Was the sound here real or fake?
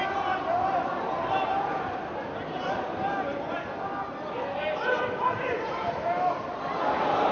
real